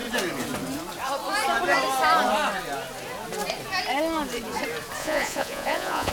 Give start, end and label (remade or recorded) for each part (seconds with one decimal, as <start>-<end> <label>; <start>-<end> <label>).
0.0-5.0 recorded; 5.0-6.1 remade